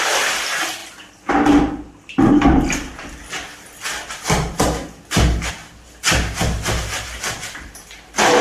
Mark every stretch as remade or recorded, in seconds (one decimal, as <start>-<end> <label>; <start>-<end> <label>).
0.0-8.4 recorded